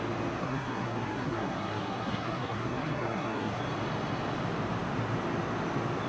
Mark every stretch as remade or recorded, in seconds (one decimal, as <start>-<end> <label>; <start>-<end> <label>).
0.0-0.4 recorded; 0.4-3.6 remade; 3.6-6.1 recorded